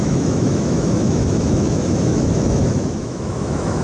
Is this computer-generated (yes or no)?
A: yes